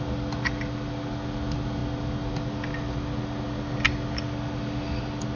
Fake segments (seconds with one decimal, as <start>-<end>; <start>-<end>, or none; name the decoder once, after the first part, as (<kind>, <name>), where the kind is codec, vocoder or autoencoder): none